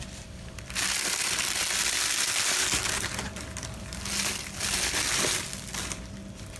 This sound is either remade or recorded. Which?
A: recorded